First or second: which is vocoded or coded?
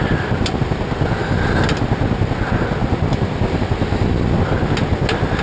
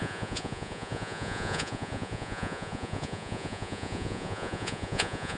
second